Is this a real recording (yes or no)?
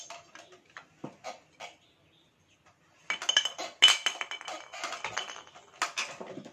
yes